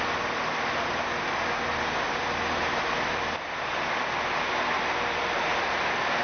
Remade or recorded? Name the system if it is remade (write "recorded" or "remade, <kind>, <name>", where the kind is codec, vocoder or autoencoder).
recorded